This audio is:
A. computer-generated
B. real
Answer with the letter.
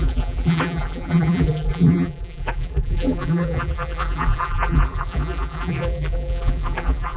A